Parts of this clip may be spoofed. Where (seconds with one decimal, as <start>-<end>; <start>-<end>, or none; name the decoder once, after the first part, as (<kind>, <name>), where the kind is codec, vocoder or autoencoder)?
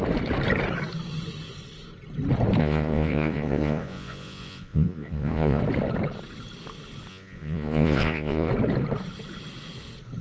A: 2.6-5.6 (vocoder, Vocos); 7.1-8.5